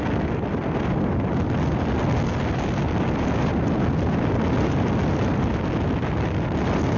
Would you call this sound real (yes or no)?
yes